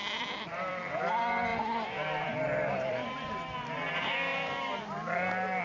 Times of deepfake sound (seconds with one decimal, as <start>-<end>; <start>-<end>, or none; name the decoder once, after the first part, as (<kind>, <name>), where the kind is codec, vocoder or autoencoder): 0.0-1.0 (vocoder, BigVGAN v2); 1.5-3.3